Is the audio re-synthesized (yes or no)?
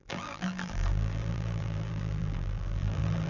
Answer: yes